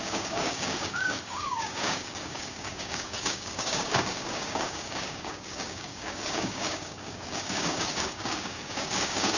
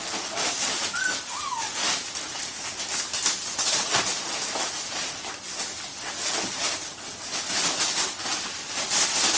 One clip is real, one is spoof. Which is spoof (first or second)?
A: first